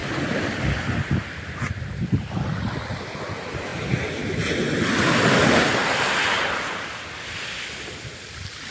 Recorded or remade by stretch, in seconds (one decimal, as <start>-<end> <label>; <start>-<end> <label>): 0.0-8.7 recorded